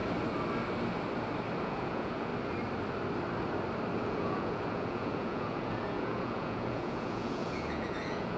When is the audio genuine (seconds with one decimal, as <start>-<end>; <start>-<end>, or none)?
0.0-1.6; 2.3-4.0